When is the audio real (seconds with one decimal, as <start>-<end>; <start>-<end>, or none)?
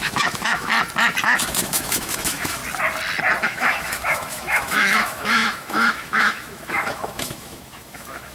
0.7-1.2; 2.6-3.4